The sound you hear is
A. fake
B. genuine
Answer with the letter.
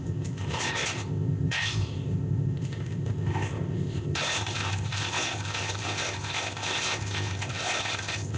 A